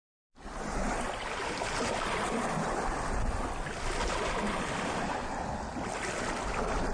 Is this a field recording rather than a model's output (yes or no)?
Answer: yes